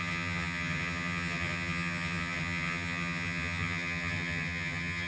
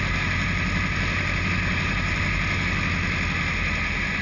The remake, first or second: first